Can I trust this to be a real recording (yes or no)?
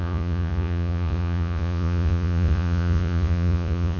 no